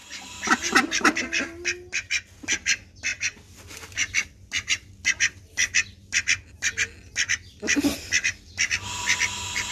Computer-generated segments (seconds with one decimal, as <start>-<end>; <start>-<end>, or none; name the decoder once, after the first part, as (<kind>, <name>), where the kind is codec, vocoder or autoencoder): 0.0-1.2 (vocoder, BigVGAN v2)